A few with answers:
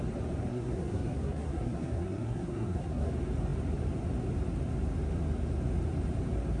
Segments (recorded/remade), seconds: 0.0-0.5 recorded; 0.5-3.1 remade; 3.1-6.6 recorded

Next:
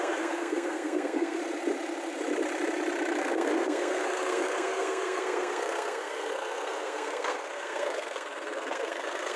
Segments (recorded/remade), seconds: 0.0-1.4 remade; 1.4-3.2 recorded; 3.2-9.4 remade

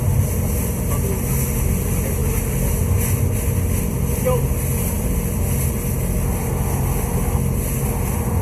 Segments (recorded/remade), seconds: 0.0-8.4 recorded

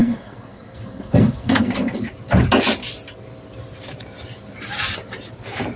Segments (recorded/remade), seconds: 0.0-2.0 remade; 2.0-5.8 recorded